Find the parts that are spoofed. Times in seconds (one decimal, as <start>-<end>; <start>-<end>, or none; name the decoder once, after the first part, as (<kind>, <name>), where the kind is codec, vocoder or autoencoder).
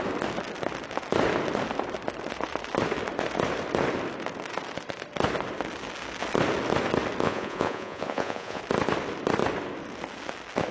7.2-8.6 (vocoder, Vocos)